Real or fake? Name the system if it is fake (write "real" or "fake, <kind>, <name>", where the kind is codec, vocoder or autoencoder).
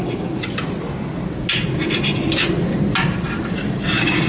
real